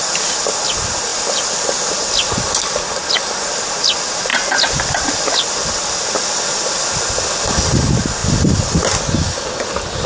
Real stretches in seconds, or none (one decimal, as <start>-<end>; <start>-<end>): 0.0-4.3; 6.1-10.1